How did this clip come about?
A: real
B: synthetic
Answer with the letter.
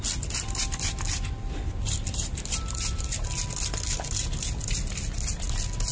A